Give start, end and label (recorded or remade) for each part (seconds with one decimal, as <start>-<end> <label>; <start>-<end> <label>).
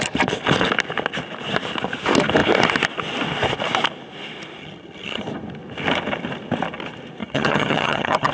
0.0-4.6 recorded; 4.6-5.2 remade; 5.2-7.2 recorded; 7.2-8.3 remade